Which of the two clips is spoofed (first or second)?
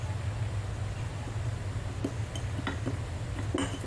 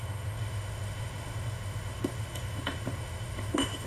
second